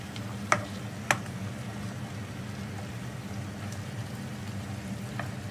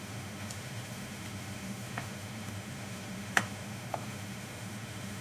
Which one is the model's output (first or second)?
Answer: second